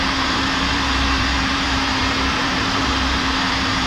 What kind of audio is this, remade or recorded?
remade